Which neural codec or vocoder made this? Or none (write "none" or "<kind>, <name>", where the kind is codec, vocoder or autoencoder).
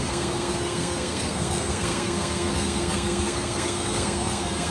codec, SNAC